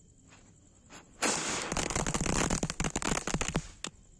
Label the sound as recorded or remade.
recorded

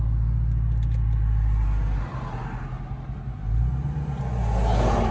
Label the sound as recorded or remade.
recorded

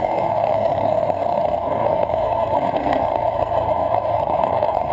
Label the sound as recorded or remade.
remade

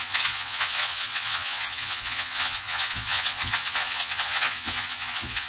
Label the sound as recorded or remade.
remade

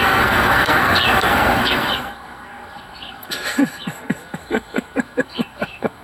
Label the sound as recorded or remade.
remade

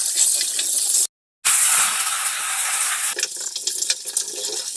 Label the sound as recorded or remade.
recorded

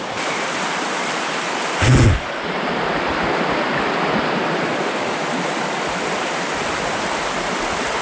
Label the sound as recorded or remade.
recorded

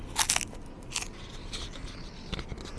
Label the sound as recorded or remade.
recorded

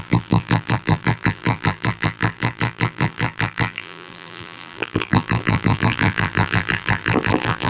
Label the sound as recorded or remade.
remade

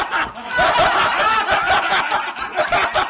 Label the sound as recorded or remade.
recorded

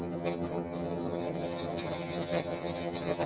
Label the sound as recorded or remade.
remade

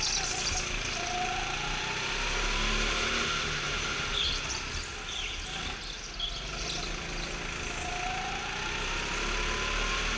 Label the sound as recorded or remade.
recorded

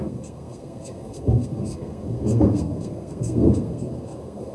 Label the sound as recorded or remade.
remade